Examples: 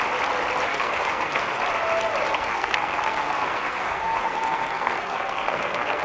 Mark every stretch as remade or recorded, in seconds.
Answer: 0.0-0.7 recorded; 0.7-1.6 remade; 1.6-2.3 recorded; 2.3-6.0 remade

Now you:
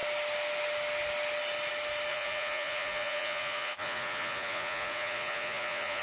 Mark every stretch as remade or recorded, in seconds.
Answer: 0.0-2.1 recorded; 2.1-6.0 remade

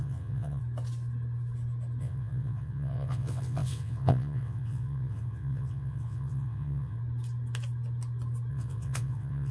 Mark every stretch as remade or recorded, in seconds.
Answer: 0.0-0.6 remade; 0.6-2.0 recorded; 2.0-7.0 remade; 7.0-8.5 recorded; 8.5-9.5 remade